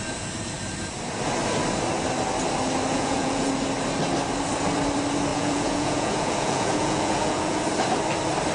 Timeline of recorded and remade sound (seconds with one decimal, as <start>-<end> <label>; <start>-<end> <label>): 0.0-2.9 recorded; 2.9-3.5 remade; 3.5-5.3 recorded; 5.3-7.6 remade; 7.6-8.5 recorded